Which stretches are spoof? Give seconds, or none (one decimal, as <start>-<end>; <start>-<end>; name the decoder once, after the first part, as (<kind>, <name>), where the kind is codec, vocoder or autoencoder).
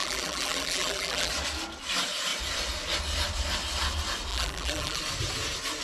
0.0-1.3 (vocoder, BigVGAN v2); 4.3-5.0